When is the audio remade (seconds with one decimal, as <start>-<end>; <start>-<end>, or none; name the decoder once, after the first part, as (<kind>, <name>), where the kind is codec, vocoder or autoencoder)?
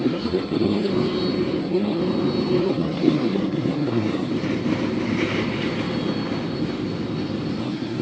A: 0.0-0.9 (codec, SNAC); 1.6-2.0; 2.6-4.3; 7.6-8.0